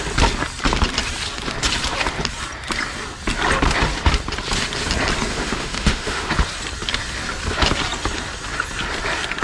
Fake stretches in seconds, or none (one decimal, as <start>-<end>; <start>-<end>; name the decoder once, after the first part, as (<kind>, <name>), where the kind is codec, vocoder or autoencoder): 5.3-6.3 (autoencoder, DAC-VAE)